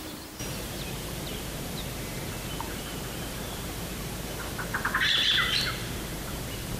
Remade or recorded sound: remade